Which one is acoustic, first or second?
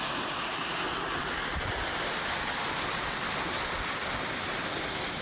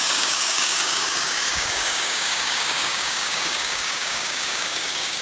first